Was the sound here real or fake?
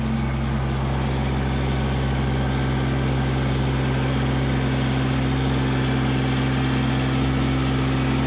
real